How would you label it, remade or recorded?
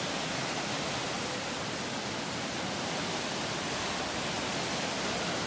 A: recorded